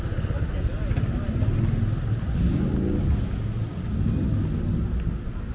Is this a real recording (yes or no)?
yes